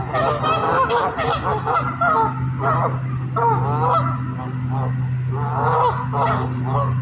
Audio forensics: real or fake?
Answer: real